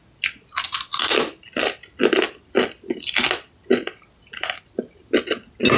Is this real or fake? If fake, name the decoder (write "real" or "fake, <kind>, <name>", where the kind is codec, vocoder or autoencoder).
real